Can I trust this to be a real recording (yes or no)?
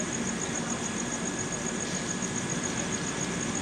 yes